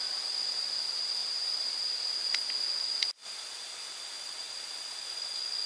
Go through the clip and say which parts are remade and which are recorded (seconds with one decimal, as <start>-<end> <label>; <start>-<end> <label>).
0.0-1.2 recorded; 1.2-2.0 remade; 2.0-3.2 recorded; 3.2-3.9 remade; 3.9-5.7 recorded

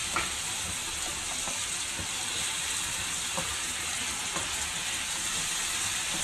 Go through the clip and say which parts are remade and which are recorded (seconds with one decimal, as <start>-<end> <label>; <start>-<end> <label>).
0.0-6.2 recorded

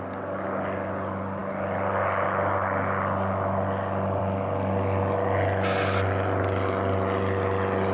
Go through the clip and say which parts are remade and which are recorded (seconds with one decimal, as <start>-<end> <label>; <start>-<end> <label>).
0.0-7.9 recorded

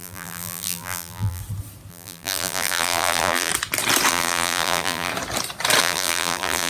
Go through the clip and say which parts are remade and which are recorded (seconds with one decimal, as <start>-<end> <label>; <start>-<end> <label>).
0.0-1.4 remade; 1.4-1.9 recorded; 1.9-3.5 remade; 3.5-4.1 recorded; 4.1-5.1 remade; 5.1-5.8 recorded; 5.8-6.7 remade

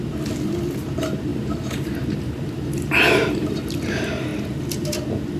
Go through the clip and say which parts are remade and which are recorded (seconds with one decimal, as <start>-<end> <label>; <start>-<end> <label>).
0.0-1.3 recorded; 1.3-3.7 remade; 3.7-5.4 recorded